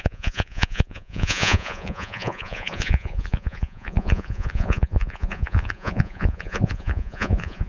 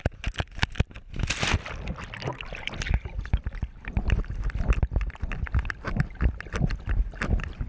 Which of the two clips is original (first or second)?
second